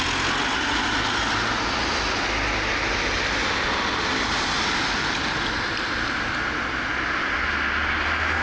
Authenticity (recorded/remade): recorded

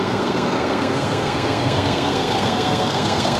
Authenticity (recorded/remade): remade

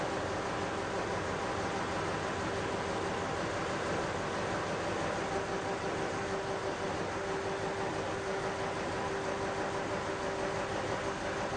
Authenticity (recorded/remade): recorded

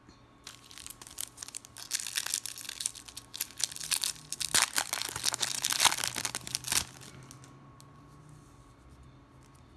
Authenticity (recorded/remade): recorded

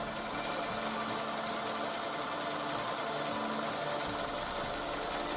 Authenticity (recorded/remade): recorded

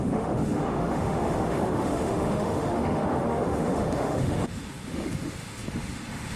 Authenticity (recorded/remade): remade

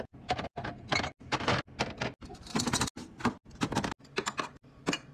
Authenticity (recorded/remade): recorded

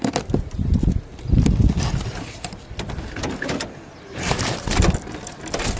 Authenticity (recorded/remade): recorded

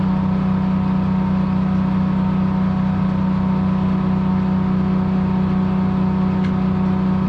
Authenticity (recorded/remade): recorded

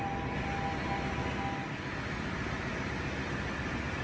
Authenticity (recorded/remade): recorded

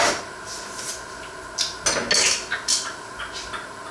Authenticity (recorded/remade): recorded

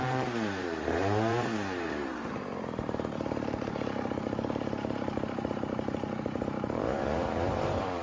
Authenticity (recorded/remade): remade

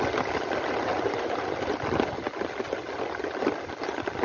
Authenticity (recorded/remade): recorded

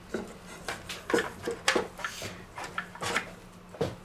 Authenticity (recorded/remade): recorded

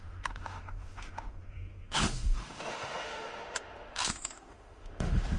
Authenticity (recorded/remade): remade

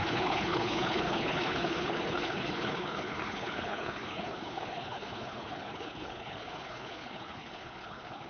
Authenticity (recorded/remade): remade